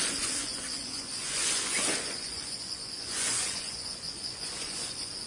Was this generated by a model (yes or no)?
yes